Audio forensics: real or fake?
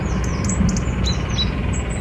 real